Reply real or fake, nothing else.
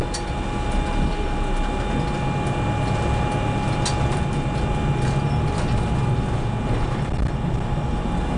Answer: real